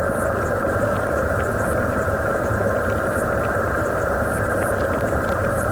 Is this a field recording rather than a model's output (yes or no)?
yes